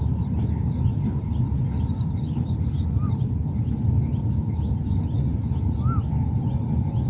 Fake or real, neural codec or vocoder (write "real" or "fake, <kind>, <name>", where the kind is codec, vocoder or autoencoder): real